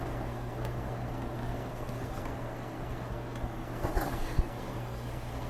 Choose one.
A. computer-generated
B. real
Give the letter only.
A